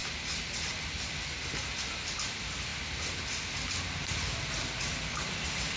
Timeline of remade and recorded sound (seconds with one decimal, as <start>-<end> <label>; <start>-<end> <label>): 0.0-5.8 recorded